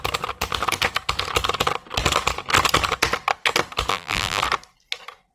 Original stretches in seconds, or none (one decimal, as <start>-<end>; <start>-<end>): 0.0-3.9; 4.4-5.3

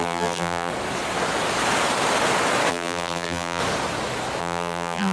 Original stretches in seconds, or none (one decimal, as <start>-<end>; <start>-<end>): 0.7-2.7; 3.6-4.4